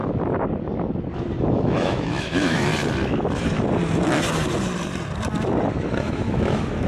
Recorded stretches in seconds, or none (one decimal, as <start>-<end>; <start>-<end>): 0.0-1.5; 2.7-5.7